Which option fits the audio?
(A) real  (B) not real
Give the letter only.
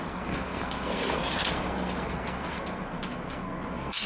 B